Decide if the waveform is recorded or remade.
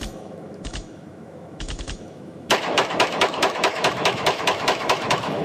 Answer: remade